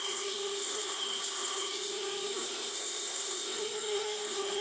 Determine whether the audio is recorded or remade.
remade